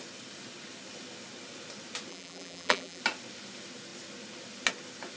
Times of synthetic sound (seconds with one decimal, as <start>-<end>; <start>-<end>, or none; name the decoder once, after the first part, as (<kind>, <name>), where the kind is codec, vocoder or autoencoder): 2.1-3.0 (vocoder, BigVGAN v2)